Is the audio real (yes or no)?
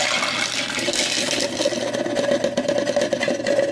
yes